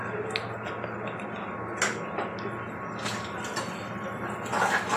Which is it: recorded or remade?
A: recorded